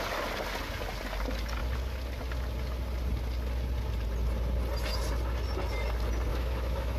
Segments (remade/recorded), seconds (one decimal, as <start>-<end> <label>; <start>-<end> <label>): 0.0-6.3 recorded; 6.3-7.0 remade